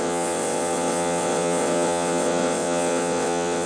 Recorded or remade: remade